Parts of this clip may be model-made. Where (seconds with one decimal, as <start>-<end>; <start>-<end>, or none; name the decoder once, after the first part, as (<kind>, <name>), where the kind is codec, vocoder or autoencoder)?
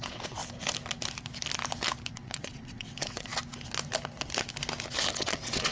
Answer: 0.0-0.4 (vocoder, WaveNeXt); 2.1-3.3; 5.1-5.7